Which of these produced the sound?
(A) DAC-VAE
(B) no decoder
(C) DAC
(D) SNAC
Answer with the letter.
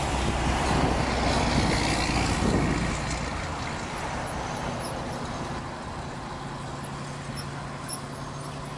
B